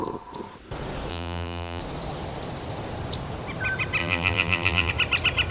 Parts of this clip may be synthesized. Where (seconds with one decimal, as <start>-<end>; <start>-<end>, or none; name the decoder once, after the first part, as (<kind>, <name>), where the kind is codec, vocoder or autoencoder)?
1.1-1.8 (vocoder, BigVGAN v2); 4.0-4.9